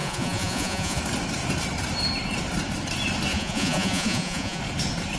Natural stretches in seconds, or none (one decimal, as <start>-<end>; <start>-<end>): 1.0-3.3; 4.6-5.2

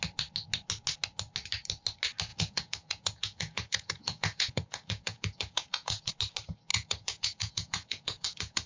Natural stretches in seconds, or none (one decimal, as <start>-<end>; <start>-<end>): 0.0-2.3; 6.1-6.7

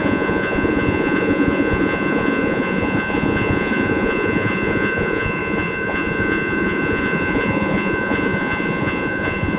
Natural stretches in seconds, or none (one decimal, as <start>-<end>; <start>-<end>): none